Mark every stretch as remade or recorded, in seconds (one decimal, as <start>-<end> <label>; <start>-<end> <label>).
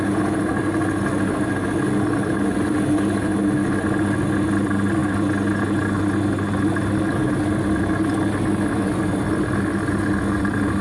0.0-10.8 recorded